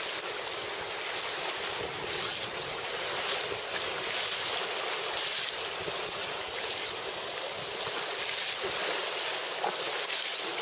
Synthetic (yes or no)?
no